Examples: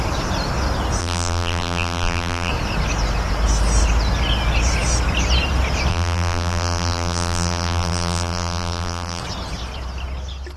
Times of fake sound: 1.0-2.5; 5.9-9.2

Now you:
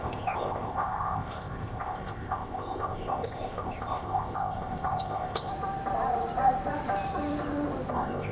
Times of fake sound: 0.0-5.5; 7.9-8.3

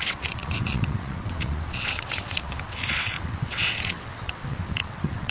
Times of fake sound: 0.0-5.3

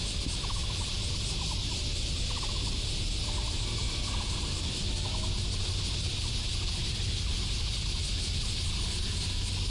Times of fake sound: 0.6-1.1; 3.8-4.8

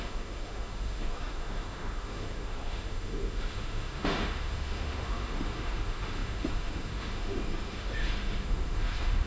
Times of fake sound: 0.0-9.3

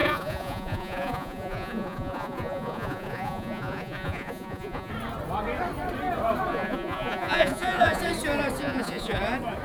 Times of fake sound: 0.0-4.9; 6.5-8.0; 8.6-9.2

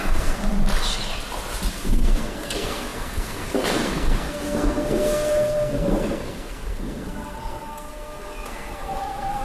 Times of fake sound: 0.0-0.4; 1.7-9.4